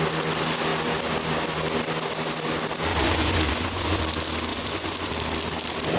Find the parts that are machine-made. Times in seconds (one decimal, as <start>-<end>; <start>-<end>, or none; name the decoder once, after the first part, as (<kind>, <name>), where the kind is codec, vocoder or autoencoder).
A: 2.9-4.0 (vocoder, Vocos); 4.5-5.1